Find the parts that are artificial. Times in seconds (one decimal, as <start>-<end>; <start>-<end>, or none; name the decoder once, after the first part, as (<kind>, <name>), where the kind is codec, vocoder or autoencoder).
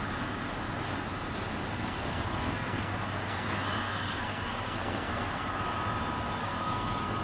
1.7-5.6 (codec, SNAC); 6.4-7.2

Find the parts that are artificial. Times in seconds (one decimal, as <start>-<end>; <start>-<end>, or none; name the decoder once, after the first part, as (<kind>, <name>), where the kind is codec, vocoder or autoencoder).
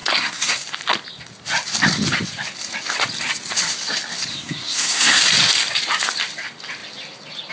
0.0-0.6 (codec, SNAC); 4.3-5.2